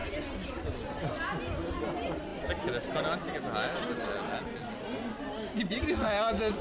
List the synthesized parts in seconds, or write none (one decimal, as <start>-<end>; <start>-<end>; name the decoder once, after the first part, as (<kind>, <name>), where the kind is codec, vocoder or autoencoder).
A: none